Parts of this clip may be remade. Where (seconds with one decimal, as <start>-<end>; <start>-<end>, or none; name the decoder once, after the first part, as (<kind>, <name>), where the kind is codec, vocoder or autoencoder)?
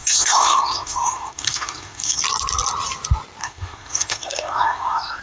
0.0-2.2 (codec, SNAC); 3.4-5.2